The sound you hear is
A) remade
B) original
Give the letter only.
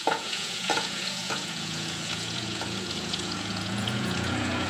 A